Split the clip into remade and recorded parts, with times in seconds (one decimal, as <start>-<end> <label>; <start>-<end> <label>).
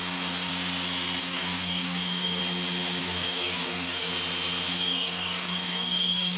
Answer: 0.0-0.5 remade; 0.5-1.2 recorded; 1.2-2.4 remade; 2.4-3.0 recorded; 3.0-4.1 remade; 4.1-4.7 recorded; 4.7-6.4 remade